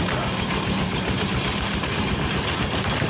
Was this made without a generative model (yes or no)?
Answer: no